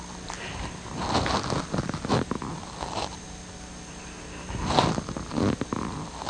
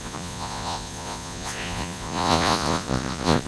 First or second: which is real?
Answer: first